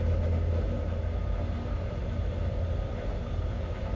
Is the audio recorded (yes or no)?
yes